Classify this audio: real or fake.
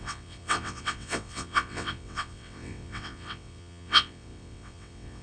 fake